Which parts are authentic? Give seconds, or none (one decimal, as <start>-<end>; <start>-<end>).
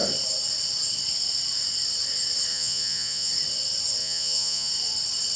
0.0-2.5; 3.3-4.0; 4.7-5.4